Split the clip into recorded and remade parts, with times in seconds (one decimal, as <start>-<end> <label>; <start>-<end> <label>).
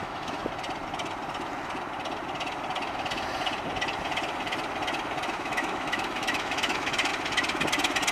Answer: 0.0-0.4 remade; 0.4-5.3 recorded; 5.3-7.1 remade; 7.1-8.1 recorded